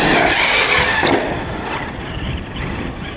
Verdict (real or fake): real